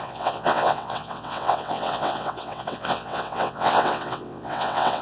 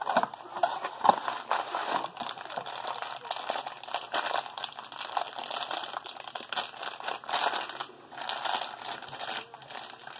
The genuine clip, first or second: second